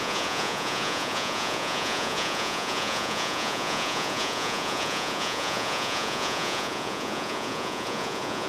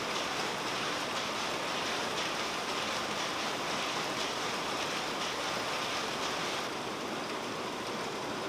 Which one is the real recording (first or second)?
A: second